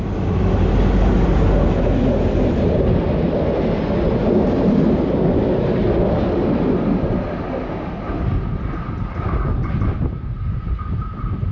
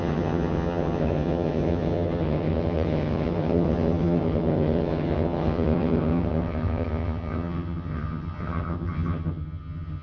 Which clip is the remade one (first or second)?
second